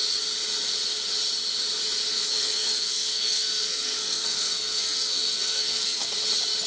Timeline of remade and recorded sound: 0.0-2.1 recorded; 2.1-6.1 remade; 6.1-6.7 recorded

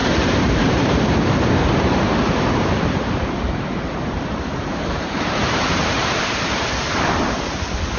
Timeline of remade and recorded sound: 0.0-8.0 remade